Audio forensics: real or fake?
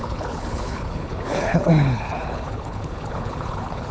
fake